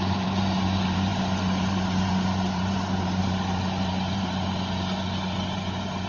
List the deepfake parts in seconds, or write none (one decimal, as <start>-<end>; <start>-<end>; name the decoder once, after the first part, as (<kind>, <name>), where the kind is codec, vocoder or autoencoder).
0.0-6.1 (vocoder, BigVGAN v2)